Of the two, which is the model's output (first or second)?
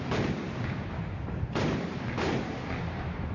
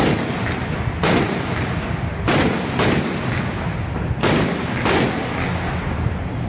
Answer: first